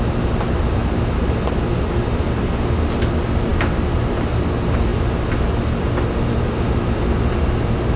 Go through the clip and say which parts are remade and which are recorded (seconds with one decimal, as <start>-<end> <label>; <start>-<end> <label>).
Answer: 0.0-8.0 recorded